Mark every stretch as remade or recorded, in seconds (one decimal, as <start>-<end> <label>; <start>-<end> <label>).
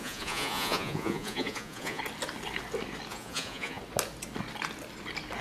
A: 0.0-2.0 remade; 2.0-3.1 recorded; 3.1-3.8 remade; 3.8-5.4 recorded